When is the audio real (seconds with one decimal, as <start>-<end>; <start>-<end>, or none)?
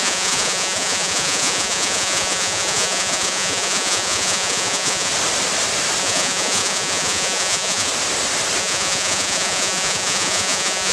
5.1-6.0; 7.9-8.6